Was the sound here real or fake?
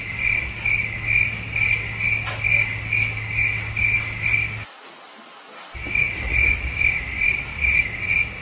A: real